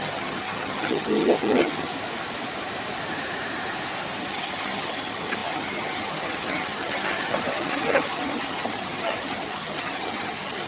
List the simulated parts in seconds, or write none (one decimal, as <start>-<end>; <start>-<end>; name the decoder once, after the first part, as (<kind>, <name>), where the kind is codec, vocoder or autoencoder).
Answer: 0.0-1.9 (vocoder, HiFi-GAN); 4.3-10.7